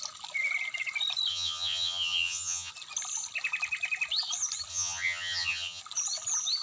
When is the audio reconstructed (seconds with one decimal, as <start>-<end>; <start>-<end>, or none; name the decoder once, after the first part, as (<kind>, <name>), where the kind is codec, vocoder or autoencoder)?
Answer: 1.3-2.7 (vocoder, HiFi-GAN); 4.7-5.8